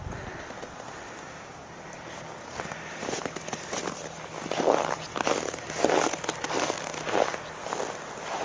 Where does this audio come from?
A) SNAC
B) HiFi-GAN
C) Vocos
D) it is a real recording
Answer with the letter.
D